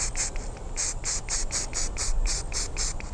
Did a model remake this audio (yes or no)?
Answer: no